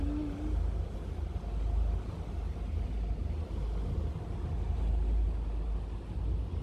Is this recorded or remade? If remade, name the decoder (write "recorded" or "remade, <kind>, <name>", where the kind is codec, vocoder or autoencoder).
recorded